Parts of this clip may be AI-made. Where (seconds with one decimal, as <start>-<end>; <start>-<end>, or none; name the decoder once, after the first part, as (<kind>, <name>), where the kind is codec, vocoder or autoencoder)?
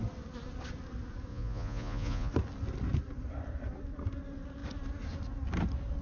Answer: 1.3-2.3 (vocoder, Vocos)